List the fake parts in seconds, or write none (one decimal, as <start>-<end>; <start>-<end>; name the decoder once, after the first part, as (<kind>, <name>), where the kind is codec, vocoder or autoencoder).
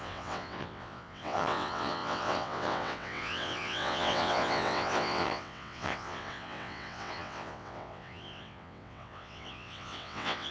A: 0.0-10.5 (vocoder, WaveNeXt)